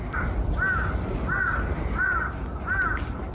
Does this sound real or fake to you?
real